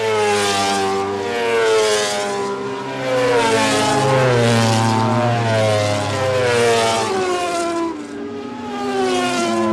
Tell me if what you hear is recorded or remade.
recorded